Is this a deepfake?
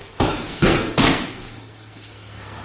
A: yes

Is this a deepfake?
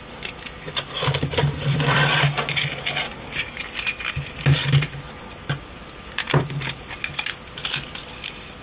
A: no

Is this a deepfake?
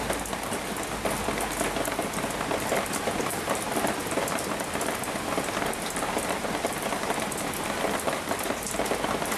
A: no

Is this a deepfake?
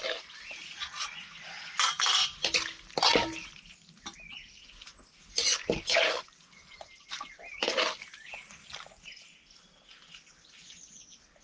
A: no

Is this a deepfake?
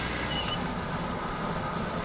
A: no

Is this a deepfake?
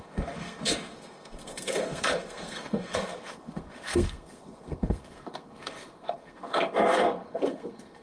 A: yes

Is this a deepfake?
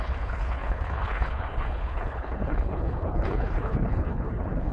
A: yes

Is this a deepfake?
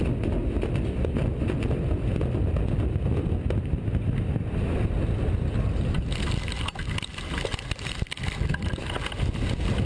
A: no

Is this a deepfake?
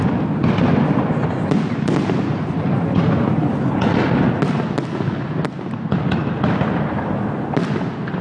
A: no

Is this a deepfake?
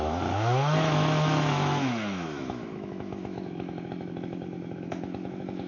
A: yes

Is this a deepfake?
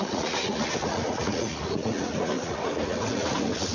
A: yes